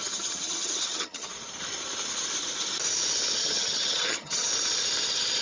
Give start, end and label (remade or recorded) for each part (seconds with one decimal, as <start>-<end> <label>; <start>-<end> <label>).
0.0-1.3 remade; 1.3-3.4 recorded; 3.4-4.5 remade; 4.5-5.4 recorded